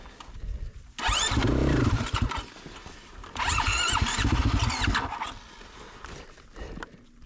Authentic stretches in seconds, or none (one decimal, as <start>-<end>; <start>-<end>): 0.0-1.6; 4.4-7.3